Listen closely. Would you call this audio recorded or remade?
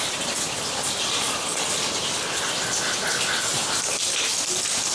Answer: recorded